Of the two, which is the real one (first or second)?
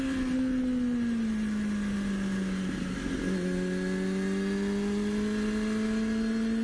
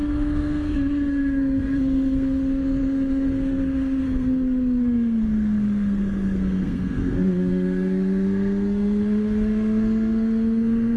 first